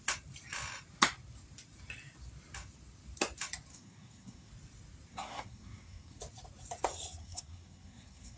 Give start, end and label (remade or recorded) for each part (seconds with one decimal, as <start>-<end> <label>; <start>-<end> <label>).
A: 0.0-3.7 recorded; 3.7-4.5 remade; 4.5-5.1 recorded; 5.1-6.2 remade; 6.2-7.2 recorded; 7.2-8.4 remade